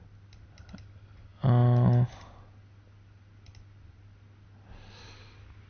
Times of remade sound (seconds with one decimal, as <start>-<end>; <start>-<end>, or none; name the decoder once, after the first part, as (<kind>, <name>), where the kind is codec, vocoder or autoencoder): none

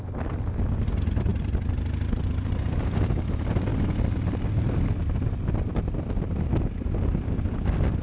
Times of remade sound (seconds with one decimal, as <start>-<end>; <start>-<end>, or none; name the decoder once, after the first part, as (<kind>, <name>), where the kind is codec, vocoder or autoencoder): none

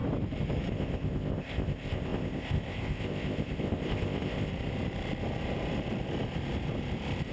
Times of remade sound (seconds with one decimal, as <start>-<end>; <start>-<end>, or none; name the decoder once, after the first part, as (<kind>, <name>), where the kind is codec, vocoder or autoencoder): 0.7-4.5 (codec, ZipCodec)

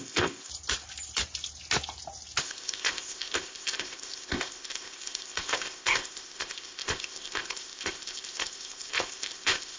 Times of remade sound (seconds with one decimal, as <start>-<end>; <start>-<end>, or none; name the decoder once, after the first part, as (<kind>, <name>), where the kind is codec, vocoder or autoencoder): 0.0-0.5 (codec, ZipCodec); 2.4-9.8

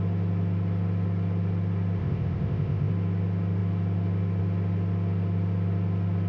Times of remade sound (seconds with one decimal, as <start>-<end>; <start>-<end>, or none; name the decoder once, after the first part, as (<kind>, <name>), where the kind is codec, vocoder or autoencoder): 2.0-2.9 (codec, ZipCodec)

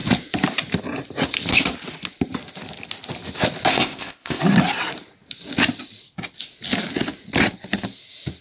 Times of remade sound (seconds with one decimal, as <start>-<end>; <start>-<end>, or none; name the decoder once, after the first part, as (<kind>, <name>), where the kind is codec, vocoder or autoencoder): 3.7-4.4 (codec, ZipCodec)